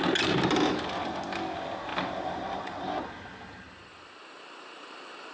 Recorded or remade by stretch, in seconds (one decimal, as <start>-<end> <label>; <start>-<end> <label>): 0.0-1.9 recorded; 1.9-4.2 remade; 4.2-5.3 recorded